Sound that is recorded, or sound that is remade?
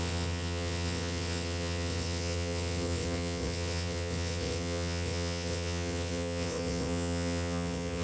remade